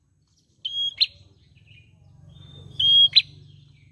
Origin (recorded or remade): recorded